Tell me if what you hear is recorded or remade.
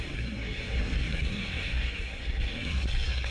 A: remade